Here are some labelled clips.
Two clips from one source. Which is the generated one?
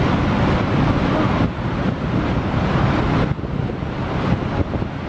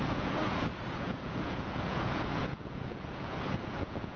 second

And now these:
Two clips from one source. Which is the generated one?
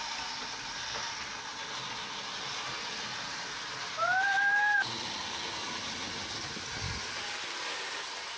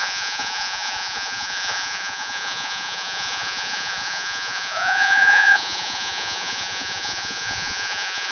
second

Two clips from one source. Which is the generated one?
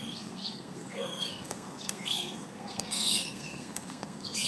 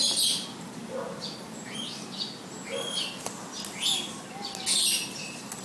first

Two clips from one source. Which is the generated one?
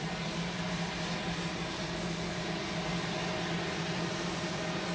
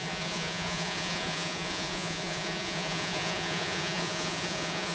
second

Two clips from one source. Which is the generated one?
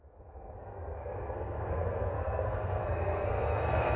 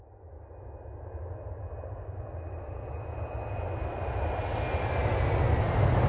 first